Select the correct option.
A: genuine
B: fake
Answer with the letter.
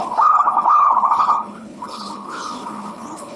B